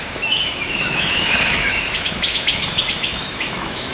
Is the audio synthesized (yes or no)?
yes